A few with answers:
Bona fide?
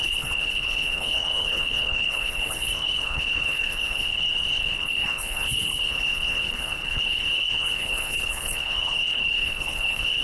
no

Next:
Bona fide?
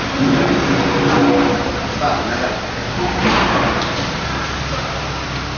yes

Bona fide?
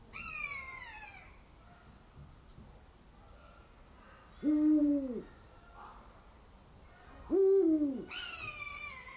yes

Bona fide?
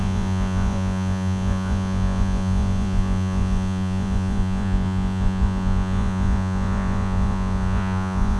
no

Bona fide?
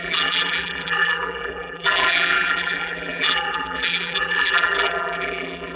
no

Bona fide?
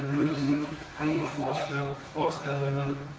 no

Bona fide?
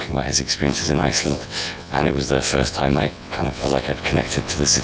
no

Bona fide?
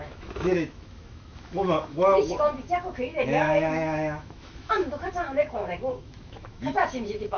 no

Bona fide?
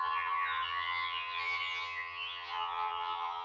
no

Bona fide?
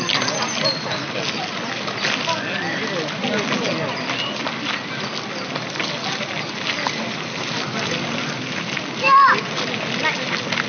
yes